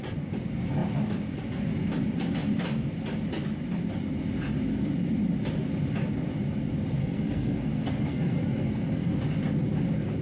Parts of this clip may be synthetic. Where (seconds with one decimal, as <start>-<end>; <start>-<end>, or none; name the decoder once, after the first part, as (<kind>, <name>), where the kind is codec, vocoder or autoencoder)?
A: 7.0-9.2 (codec, SNAC)

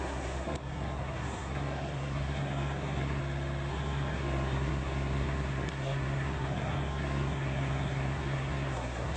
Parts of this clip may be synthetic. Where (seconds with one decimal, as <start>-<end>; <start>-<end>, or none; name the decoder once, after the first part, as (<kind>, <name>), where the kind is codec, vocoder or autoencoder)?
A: 0.0-3.2 (codec, SNAC); 3.7-9.2

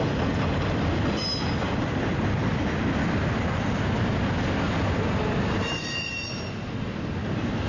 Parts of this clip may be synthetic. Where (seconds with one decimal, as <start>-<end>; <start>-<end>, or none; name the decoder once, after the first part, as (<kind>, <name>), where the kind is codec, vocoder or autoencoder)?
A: none

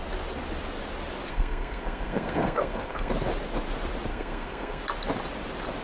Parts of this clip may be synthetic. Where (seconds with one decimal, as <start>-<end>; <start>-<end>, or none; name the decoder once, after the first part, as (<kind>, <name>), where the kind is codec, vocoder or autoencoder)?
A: 1.3-3.1 (codec, SNAC); 4.1-4.8

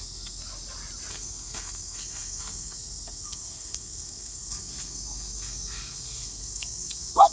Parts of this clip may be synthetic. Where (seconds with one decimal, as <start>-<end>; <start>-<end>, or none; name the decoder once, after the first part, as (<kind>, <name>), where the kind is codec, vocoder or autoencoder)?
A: 0.0-0.4 (codec, SNAC); 1.1-7.3

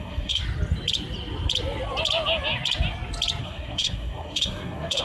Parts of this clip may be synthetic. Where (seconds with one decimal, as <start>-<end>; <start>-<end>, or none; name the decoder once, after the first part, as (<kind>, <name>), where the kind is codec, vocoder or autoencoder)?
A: 0.0-0.4 (codec, SNAC); 3.4-5.0

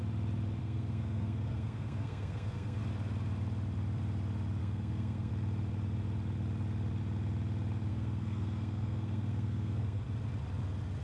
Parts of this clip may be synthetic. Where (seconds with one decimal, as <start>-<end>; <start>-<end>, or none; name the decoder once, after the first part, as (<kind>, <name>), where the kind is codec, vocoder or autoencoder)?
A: 0.6-2.8 (codec, SNAC); 4.6-5.3; 7.9-10.0